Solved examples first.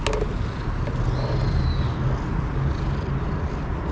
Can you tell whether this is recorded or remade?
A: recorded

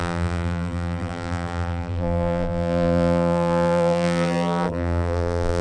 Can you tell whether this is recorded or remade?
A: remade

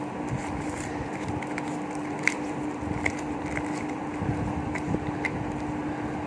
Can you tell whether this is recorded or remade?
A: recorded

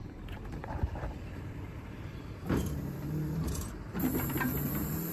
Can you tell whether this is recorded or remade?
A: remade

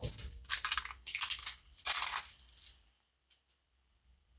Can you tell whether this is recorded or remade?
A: recorded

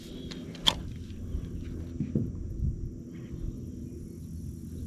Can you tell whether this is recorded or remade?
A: recorded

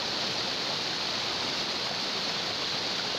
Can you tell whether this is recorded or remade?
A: remade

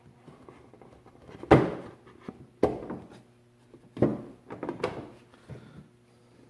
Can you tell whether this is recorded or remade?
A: recorded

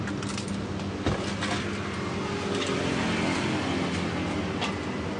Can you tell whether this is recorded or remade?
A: recorded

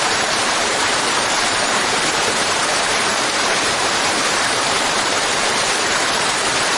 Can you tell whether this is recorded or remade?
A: remade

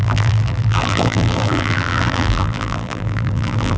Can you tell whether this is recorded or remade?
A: remade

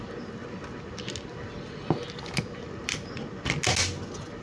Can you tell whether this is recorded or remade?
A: recorded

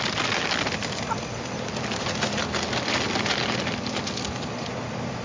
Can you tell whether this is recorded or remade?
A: remade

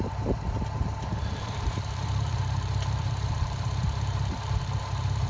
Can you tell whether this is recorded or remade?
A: remade